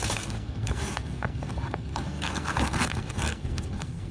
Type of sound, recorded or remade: remade